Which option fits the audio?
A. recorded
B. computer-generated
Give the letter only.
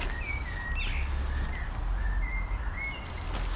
A